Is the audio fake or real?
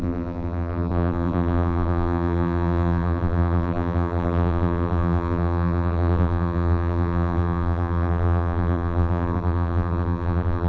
fake